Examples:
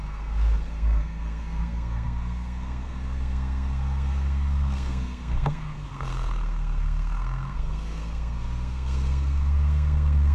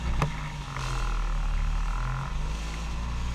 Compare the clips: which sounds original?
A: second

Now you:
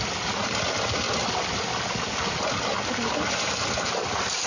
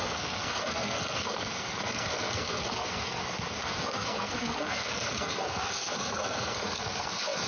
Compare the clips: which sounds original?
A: first